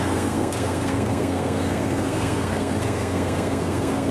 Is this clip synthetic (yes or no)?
yes